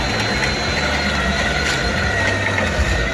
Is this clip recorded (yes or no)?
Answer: yes